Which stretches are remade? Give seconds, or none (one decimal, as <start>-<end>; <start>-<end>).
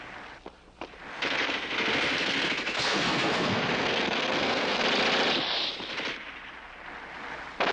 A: 1.1-4.8